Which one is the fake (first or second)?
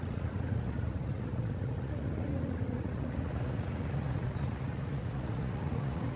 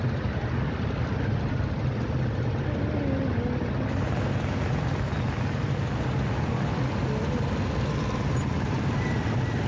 first